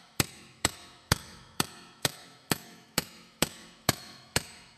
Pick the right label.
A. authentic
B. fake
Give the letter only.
B